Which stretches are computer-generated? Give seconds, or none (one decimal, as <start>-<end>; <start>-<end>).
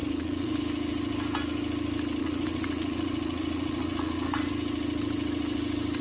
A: 0.0-0.6; 2.2-4.5